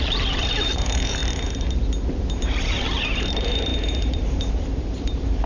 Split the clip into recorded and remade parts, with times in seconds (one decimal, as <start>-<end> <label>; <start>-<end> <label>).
0.0-1.2 remade; 1.2-2.7 recorded; 2.7-5.5 remade